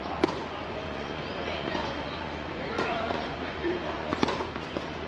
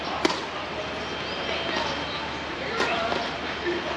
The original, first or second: second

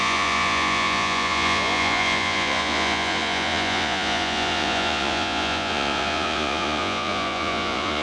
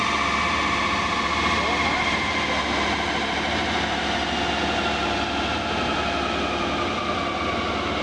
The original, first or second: second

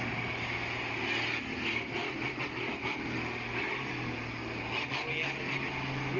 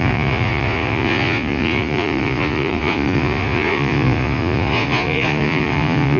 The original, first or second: first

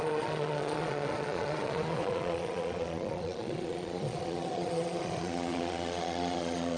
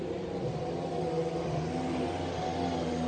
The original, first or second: second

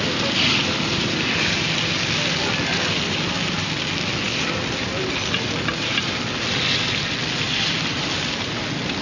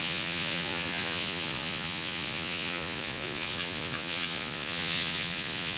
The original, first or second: first